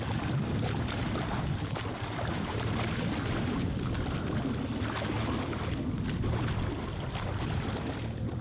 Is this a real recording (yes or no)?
no